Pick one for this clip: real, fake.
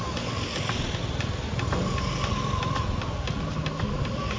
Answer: real